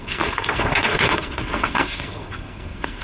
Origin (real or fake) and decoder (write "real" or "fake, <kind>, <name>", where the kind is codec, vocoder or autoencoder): fake, codec, SNAC